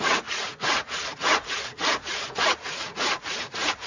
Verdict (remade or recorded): remade